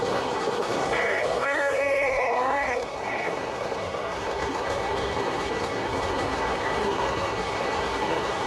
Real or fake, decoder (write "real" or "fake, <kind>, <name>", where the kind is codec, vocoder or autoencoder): fake, codec, SNAC